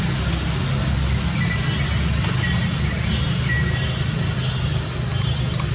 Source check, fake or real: real